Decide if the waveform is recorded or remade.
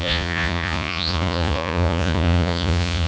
remade